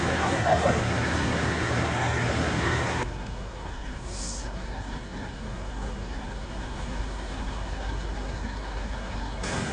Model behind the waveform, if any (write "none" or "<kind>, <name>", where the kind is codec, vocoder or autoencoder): codec, SNAC